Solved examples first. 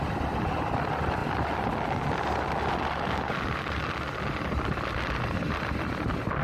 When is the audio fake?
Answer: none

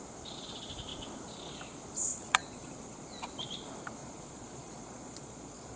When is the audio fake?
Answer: 2.1-2.7 (vocoder, Vocos); 4.0-5.8

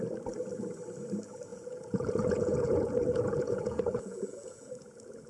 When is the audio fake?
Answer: 1.5-4.7 (vocoder, Vocos)

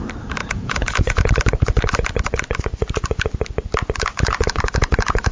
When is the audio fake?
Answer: 0.4-1.3 (vocoder, Vocos)

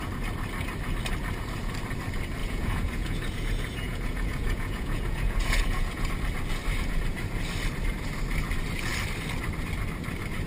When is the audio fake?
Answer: 2.4-6.1 (vocoder, Vocos)

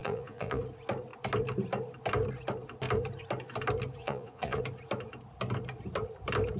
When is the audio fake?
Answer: 0.0-0.6 (vocoder, Vocos); 4.0-4.6